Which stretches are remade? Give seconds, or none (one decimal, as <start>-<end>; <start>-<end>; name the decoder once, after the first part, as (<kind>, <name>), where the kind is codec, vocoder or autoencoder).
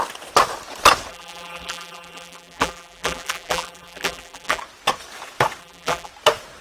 1.1-4.6 (vocoder, BigVGAN v2); 5.6-6.1